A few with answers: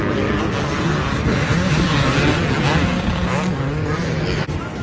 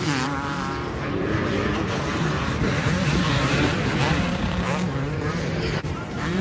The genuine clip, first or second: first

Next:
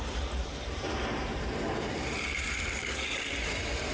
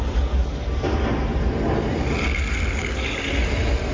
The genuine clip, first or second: second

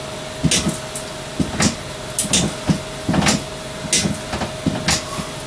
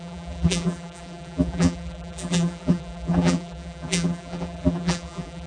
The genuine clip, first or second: first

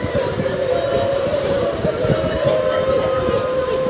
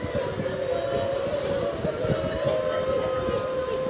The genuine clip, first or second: second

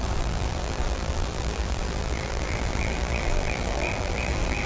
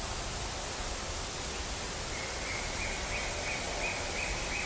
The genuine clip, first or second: second